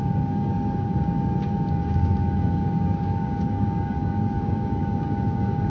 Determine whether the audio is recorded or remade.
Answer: remade